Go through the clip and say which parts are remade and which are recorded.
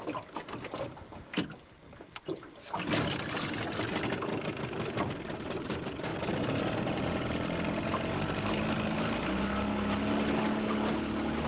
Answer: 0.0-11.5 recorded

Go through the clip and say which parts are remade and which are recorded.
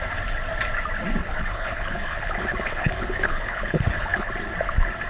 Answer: 0.0-1.2 recorded; 1.2-4.3 remade; 4.3-5.1 recorded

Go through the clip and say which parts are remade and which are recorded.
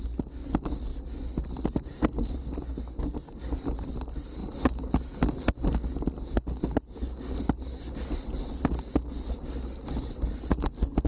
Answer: 0.0-11.1 recorded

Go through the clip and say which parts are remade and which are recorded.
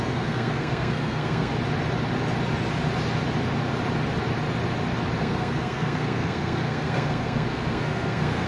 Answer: 0.0-1.5 remade; 1.5-5.2 recorded; 5.2-8.5 remade